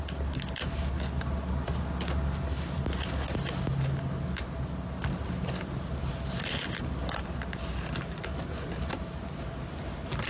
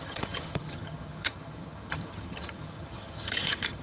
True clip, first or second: first